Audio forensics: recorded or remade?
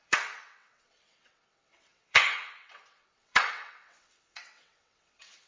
remade